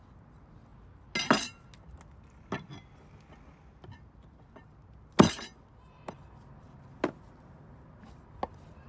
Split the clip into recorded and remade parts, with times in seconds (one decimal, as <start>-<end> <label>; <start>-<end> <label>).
0.0-8.9 recorded